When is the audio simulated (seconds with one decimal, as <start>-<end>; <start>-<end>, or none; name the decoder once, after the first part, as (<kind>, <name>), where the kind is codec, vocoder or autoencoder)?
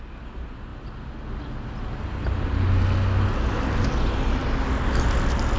none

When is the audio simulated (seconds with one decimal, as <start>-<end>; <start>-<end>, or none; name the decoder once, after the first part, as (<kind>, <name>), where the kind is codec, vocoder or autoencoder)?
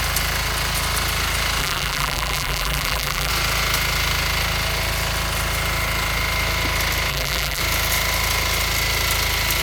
1.6-3.3 (vocoder, BigVGAN v2); 7.1-7.6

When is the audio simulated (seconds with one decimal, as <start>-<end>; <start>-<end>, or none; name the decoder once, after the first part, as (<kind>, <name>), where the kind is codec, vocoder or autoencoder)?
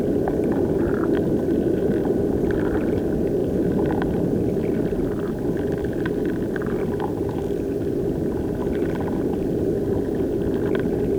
none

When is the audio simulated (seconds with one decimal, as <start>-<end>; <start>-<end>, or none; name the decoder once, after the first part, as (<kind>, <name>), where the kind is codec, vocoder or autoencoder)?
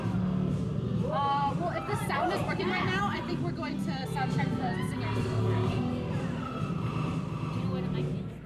0.7-3.3 (vocoder, BigVGAN v2)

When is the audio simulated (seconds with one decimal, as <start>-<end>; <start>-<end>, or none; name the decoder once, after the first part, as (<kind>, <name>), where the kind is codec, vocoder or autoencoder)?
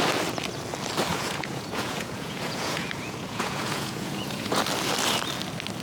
1.1-4.6 (vocoder, Vocos)